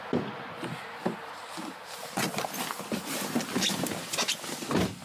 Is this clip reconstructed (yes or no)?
no